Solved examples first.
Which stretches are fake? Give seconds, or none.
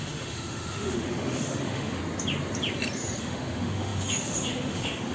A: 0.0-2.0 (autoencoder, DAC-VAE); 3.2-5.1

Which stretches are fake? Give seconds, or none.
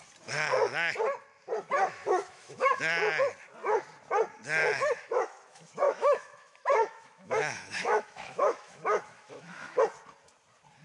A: 2.0-2.8 (autoencoder, DAC-VAE); 4.6-9.8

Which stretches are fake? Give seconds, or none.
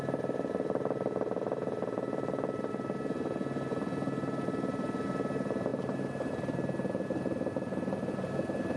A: none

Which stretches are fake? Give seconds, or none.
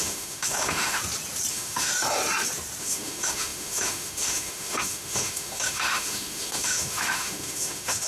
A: 0.0-1.0 (autoencoder, DAC-VAE); 1.5-1.9; 2.8-8.1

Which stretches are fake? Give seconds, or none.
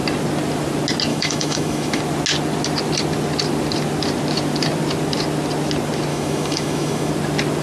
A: 1.1-2.0 (autoencoder, DAC-VAE); 6.1-7.1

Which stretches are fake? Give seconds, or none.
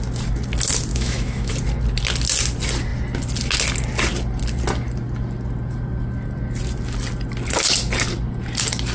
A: 0.9-1.5 (autoencoder, DAC-VAE)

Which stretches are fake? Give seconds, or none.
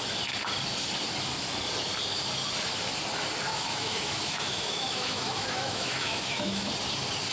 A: 3.5-6.7 (autoencoder, DAC-VAE)